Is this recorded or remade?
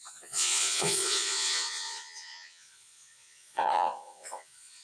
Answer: remade